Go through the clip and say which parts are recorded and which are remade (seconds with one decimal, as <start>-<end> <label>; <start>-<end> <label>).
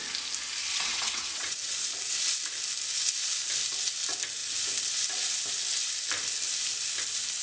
0.0-0.6 recorded; 0.6-1.8 remade; 1.8-7.4 recorded